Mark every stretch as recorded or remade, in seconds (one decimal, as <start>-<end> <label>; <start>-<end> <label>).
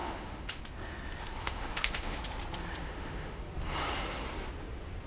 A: 0.0-0.6 remade; 0.6-1.4 recorded; 1.4-2.2 remade; 2.2-2.8 recorded; 2.8-3.4 remade; 3.4-5.1 recorded